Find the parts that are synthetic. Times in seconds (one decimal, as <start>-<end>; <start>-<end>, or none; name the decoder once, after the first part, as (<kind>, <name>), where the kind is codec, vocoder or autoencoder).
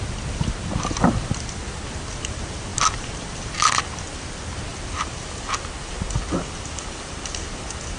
none